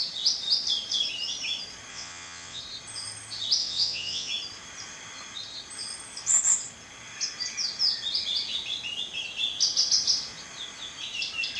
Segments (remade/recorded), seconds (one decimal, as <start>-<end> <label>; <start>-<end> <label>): 0.0-1.9 recorded; 1.9-2.6 remade; 2.6-3.6 recorded; 3.6-4.3 remade; 4.3-11.6 recorded